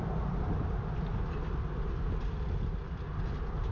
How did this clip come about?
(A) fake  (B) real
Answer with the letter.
B